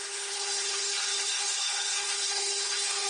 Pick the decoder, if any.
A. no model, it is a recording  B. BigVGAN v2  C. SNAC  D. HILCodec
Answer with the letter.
D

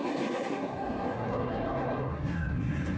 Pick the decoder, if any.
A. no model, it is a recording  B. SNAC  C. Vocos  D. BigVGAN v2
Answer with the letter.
B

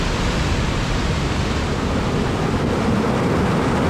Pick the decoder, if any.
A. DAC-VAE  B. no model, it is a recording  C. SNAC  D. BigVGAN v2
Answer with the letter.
B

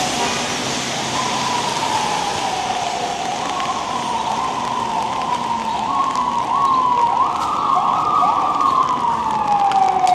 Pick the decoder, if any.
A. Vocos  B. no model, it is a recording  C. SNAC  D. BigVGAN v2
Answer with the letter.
B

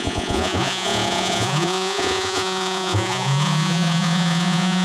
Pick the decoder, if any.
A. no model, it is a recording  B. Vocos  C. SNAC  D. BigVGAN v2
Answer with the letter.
B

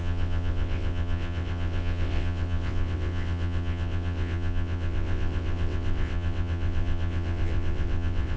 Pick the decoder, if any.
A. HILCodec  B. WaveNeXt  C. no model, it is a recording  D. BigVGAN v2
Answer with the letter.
B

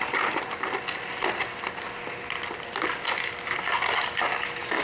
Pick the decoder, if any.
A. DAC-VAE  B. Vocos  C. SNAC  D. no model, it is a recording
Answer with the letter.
D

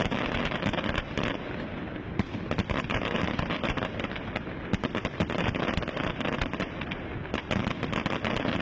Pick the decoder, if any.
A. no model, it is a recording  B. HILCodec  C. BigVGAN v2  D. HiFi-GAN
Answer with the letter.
A